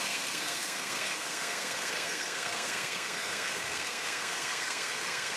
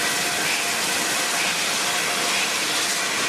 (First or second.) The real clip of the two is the second